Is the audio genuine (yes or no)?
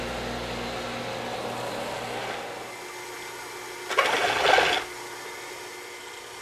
yes